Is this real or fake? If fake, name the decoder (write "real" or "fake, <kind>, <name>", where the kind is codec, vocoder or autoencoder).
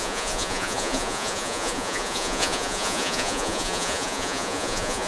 fake, vocoder, Vocos